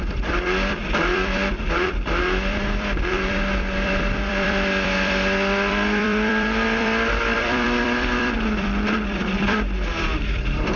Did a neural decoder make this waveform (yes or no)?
yes